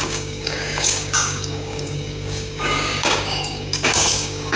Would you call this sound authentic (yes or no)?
no